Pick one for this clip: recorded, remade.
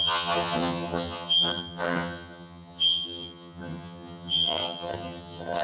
remade